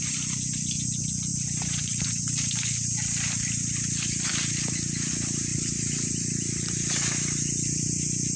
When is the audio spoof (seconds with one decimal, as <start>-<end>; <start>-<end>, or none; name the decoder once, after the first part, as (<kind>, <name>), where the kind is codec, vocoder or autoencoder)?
1.3-2.0 (vocoder, BigVGAN v2); 4.3-5.1